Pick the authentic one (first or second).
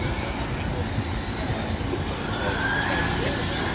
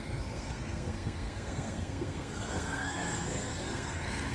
first